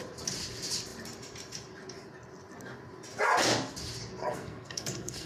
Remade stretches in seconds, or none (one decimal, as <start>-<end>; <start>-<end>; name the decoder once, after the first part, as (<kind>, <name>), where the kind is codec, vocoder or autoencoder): 4.2-5.3 (codec, SNAC)